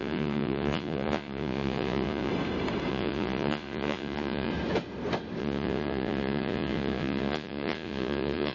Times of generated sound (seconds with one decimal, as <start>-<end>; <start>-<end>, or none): 0.0-2.3; 2.9-4.5; 5.4-8.5